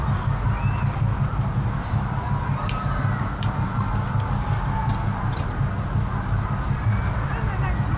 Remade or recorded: recorded